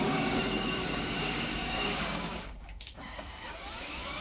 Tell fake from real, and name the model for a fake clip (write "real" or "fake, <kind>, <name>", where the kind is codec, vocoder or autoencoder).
fake, codec, DAC